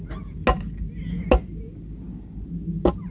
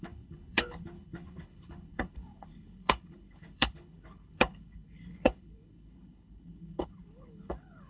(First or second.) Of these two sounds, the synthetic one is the second